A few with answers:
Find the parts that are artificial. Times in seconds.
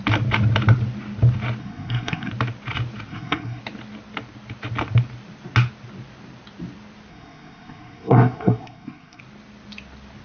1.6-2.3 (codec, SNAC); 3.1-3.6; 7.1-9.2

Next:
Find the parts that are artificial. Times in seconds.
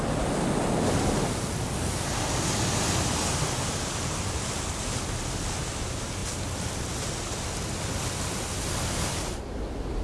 none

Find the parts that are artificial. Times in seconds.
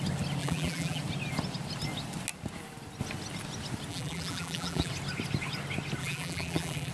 0.4-1.0 (vocoder, BigVGAN v2); 3.9-4.9; 6.0-6.9